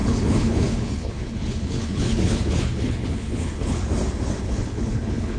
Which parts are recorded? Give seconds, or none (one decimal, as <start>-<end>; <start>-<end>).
3.9-4.4